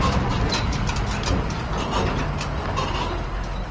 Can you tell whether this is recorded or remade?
recorded